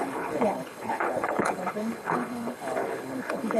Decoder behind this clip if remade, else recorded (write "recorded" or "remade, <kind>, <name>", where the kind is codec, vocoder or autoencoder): remade, codec, HILCodec